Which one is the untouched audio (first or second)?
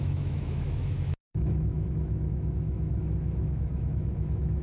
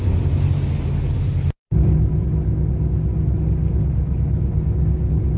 second